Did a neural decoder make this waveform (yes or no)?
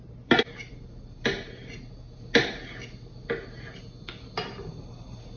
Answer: no